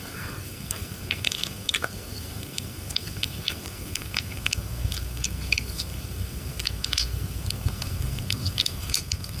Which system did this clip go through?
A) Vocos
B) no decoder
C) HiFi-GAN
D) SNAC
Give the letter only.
D